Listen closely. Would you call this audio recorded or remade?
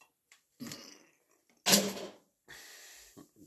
recorded